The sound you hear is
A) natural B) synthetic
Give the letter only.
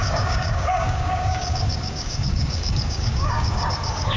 B